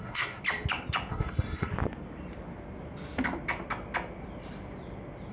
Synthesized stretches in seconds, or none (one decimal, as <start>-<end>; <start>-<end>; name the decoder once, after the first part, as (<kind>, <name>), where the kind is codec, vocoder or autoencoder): 0.0-0.4 (codec, SNAC); 1.1-1.7